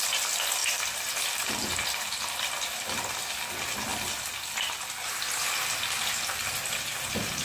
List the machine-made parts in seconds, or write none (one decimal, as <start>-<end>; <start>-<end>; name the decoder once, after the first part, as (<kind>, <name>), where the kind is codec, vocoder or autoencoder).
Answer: none